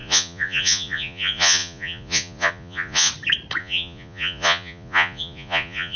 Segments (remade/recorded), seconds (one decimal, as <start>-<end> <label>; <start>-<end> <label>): 0.0-3.1 remade; 3.1-3.6 recorded; 3.6-6.0 remade

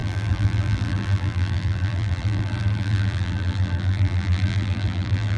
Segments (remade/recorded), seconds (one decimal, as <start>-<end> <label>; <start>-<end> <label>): 0.0-5.4 remade